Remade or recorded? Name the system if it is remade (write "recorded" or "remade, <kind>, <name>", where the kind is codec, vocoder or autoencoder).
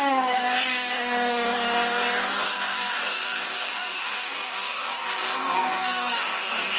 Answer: remade, codec, DAC